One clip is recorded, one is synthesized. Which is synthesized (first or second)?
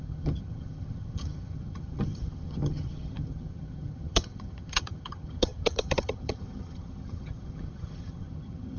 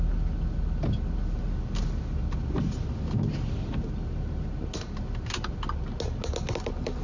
first